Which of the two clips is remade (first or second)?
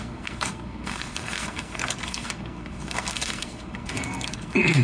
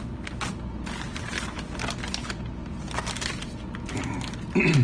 first